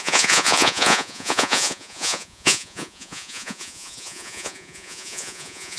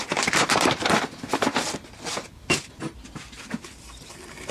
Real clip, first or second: second